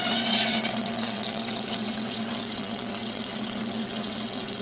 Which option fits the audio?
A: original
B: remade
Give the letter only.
B